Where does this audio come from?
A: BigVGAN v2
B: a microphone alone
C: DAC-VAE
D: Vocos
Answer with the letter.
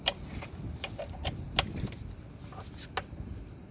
B